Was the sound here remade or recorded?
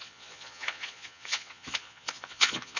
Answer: remade